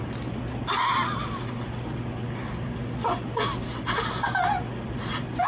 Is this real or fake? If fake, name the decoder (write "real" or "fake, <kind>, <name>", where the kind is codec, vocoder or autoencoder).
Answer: real